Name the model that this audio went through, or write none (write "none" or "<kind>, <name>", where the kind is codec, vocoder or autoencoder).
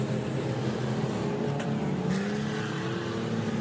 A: none